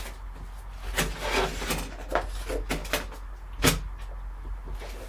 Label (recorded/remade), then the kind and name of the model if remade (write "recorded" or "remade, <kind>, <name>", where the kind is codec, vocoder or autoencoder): recorded